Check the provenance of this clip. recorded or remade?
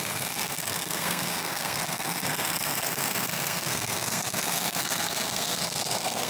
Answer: remade